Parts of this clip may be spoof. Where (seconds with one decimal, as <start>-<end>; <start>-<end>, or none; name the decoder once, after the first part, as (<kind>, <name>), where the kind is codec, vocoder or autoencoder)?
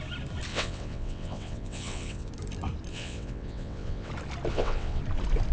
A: 0.5-2.3 (vocoder, WaveNeXt); 2.9-4.1; 4.5-5.0